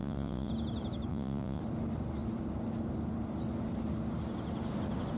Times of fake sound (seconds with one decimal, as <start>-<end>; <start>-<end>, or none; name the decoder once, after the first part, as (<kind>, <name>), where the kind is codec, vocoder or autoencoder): 0.0-0.5 (vocoder, Vocos); 1.1-1.6